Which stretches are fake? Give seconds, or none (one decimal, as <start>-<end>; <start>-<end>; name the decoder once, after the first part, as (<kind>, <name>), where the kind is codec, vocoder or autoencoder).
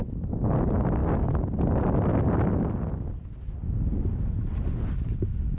none